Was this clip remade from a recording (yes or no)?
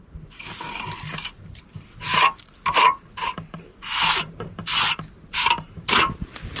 yes